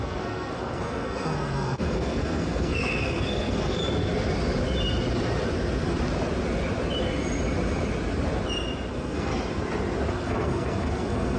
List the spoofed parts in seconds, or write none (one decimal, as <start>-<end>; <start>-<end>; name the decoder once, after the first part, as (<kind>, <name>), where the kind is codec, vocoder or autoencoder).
0.0-3.8 (codec, SNAC); 8.9-9.3; 10.1-11.4